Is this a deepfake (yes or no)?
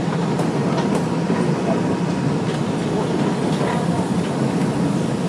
no